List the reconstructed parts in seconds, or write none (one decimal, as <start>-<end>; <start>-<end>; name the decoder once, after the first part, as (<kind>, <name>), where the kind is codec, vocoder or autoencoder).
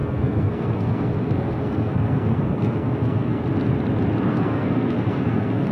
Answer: 0.0-3.4 (codec, SNAC); 4.3-5.7